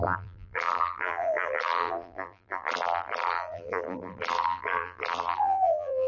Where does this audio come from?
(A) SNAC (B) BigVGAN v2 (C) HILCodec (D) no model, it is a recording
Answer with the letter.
B